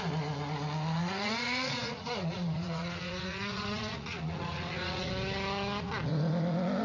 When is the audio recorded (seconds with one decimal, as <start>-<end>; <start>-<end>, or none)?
0.0-1.0; 5.1-6.8